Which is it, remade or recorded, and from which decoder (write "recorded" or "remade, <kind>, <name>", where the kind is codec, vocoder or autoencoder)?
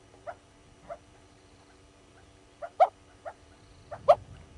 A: remade, vocoder, BigVGAN v2